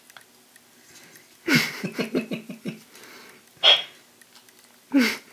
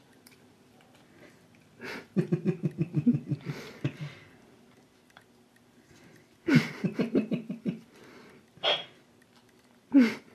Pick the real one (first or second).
first